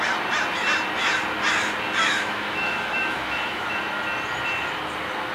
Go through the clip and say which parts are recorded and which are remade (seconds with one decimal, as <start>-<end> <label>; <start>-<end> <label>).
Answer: 0.0-2.0 recorded; 2.0-3.8 remade; 3.8-5.3 recorded